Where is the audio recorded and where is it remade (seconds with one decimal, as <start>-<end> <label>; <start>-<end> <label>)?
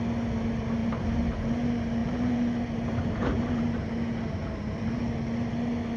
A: 0.0-0.8 recorded; 0.8-1.3 remade; 1.3-2.0 recorded; 2.0-3.9 remade; 3.9-4.4 recorded; 4.4-5.0 remade; 5.0-6.0 recorded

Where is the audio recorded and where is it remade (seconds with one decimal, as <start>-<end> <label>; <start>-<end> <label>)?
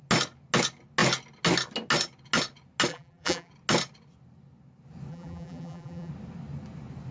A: 0.0-2.9 recorded; 2.9-3.5 remade; 3.5-5.1 recorded; 5.1-6.1 remade; 6.1-7.1 recorded